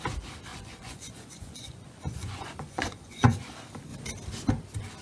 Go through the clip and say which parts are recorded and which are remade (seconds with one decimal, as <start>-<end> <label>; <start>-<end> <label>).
0.0-0.5 recorded; 0.5-3.5 remade; 3.5-5.0 recorded